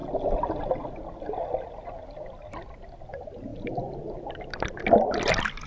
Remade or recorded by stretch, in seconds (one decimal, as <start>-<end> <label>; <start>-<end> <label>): 0.0-5.7 recorded